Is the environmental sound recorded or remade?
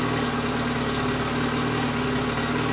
recorded